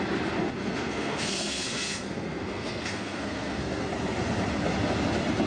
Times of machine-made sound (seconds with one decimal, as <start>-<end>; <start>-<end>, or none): 0.6-3.9

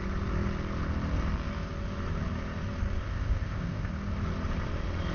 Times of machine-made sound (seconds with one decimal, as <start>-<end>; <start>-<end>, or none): 3.0-3.9

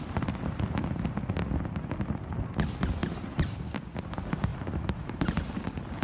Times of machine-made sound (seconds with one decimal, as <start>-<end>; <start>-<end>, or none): 3.0-3.8; 4.5-5.5